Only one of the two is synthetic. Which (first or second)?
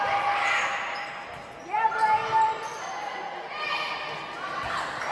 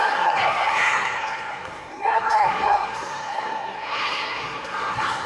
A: second